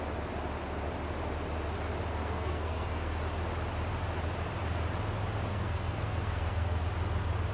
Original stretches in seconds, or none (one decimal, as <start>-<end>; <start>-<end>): 0.0-2.1; 3.2-5.5; 6.8-7.5